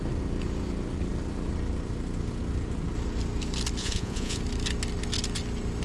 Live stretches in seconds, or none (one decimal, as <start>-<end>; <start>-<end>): 0.0-3.8; 4.4-5.8